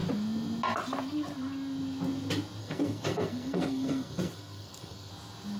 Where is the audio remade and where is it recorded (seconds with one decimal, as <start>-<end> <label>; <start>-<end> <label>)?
0.0-2.6 recorded; 2.6-5.1 remade; 5.1-5.6 recorded